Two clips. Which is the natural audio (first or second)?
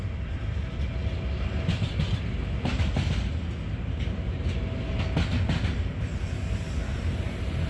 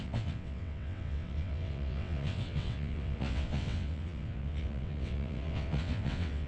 first